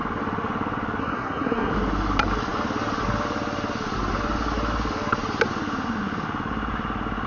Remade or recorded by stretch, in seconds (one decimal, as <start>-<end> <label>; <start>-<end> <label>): 0.0-1.0 recorded; 1.0-1.7 remade; 1.7-7.3 recorded